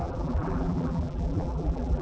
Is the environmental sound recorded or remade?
remade